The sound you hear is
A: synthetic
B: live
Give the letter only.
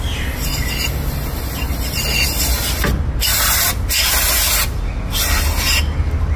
B